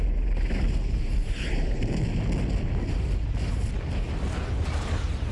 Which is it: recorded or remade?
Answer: recorded